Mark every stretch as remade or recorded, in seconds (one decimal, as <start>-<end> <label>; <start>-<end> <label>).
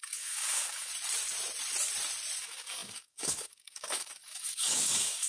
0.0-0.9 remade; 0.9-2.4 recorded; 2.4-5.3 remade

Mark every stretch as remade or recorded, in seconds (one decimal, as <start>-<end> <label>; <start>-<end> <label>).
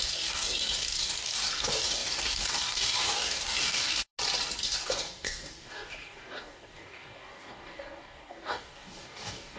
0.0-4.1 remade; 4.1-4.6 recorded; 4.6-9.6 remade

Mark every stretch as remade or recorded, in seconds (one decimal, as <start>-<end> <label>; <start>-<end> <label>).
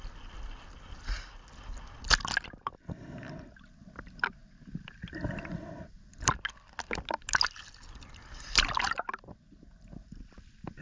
0.0-10.8 recorded